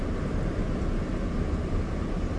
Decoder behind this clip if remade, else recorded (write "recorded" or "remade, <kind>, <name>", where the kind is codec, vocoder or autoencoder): recorded